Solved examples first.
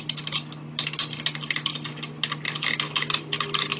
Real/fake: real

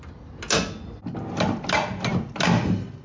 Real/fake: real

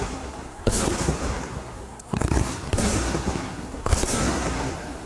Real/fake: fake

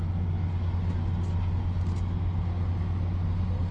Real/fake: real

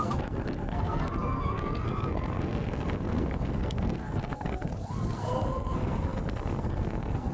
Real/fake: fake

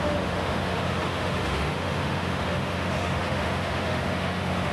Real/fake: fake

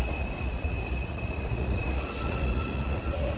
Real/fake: fake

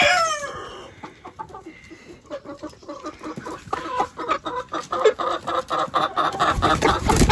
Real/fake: real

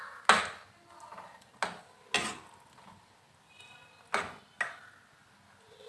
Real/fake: real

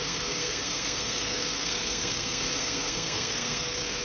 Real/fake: fake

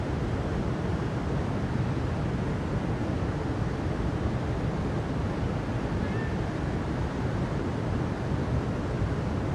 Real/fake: real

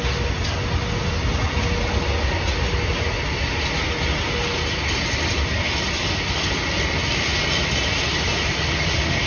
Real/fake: real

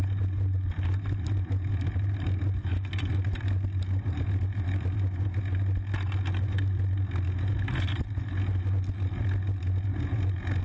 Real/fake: real